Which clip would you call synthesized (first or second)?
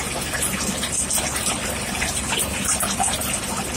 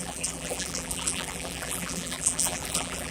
second